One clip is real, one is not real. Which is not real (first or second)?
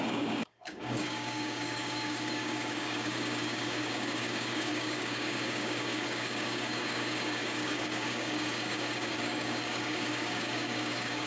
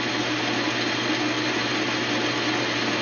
first